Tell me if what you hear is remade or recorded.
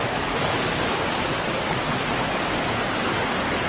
recorded